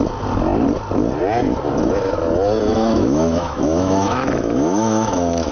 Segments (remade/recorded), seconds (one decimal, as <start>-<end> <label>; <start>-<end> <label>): 0.0-2.7 recorded; 2.7-5.5 remade